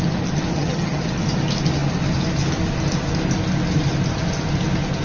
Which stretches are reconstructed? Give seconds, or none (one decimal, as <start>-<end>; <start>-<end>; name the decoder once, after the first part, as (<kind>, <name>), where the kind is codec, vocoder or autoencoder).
0.5-1.0 (vocoder, HiFi-GAN)